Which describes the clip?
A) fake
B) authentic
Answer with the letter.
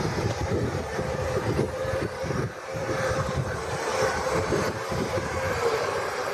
A